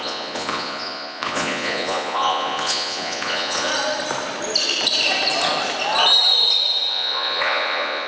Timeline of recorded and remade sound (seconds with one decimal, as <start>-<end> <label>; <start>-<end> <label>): 0.0-3.7 remade; 3.7-6.9 recorded; 6.9-8.1 remade